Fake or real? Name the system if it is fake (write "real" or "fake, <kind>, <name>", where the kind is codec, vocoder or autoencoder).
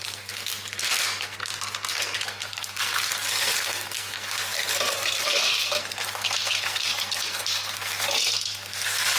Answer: fake, codec, SNAC